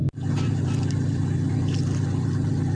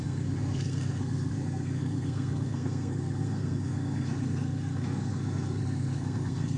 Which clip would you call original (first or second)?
first